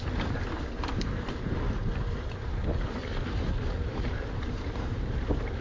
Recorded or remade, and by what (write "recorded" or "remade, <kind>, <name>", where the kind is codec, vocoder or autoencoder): remade, vocoder, BigVGAN v2